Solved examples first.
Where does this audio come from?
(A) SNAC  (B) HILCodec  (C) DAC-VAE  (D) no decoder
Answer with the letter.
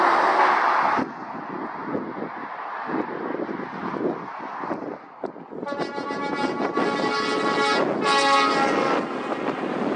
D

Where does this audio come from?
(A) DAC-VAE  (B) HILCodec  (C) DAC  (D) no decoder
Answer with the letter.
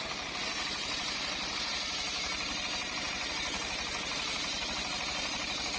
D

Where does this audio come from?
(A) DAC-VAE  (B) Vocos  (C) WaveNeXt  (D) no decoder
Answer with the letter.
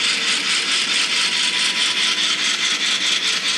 D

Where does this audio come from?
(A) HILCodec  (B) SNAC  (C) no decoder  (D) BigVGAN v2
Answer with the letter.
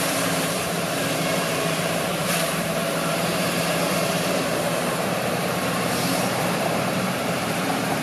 D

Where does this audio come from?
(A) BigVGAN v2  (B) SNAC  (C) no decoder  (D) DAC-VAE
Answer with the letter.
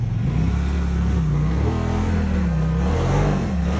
B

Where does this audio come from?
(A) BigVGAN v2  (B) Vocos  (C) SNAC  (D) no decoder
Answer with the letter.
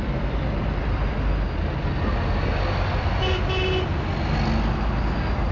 D